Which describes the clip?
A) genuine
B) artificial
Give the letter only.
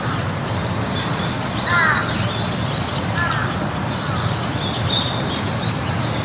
A